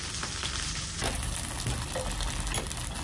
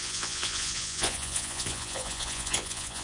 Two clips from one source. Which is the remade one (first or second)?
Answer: second